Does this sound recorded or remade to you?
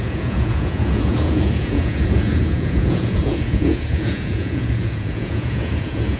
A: remade